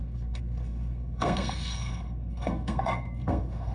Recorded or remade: remade